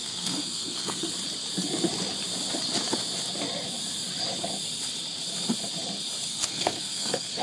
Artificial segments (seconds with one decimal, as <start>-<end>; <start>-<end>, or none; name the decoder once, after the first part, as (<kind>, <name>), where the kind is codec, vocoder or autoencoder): 0.0-1.1 (codec, SNAC); 6.3-7.4